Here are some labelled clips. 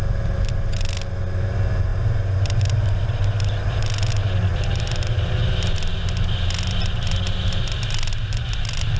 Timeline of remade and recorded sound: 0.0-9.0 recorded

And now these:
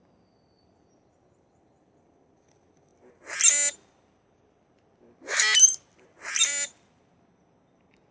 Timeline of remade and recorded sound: 0.0-8.1 recorded

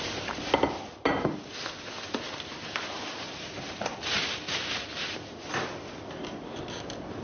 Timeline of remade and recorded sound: 0.0-7.2 recorded

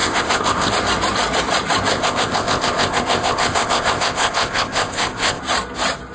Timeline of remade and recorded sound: 0.0-0.7 remade; 0.7-1.9 recorded; 1.9-5.4 remade; 5.4-6.1 recorded

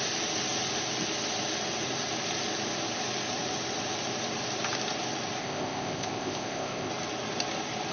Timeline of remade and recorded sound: 0.0-5.4 recorded; 5.4-6.9 remade; 6.9-7.9 recorded